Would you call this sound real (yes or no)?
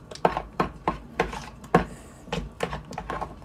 yes